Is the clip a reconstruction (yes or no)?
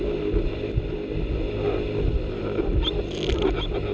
no